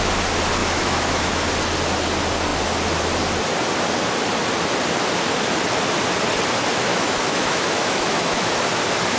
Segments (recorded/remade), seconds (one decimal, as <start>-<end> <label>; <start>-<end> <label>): 0.0-0.6 recorded; 0.6-1.5 remade; 1.5-6.9 recorded; 6.9-8.5 remade; 8.5-9.2 recorded